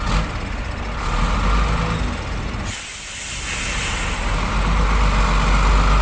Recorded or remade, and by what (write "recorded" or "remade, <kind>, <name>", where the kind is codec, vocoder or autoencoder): recorded